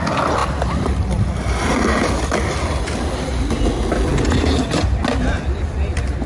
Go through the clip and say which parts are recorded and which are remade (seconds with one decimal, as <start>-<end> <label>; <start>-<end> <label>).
0.0-6.3 recorded